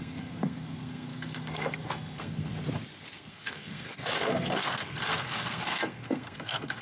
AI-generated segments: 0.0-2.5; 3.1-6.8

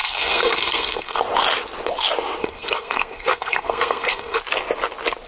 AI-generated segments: 0.0-1.2; 2.4-4.4

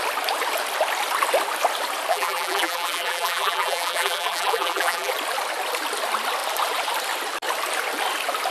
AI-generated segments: 2.1-5.1

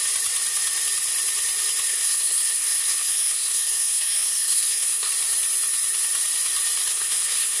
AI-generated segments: 1.9-5.1; 6.9-7.6